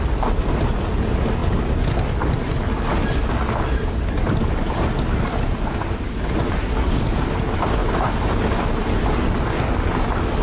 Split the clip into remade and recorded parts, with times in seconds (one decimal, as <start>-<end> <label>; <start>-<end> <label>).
0.0-10.4 recorded